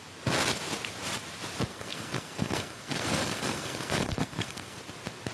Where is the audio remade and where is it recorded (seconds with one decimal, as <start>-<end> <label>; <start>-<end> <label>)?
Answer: 0.0-1.7 recorded; 1.7-4.8 remade; 4.8-5.3 recorded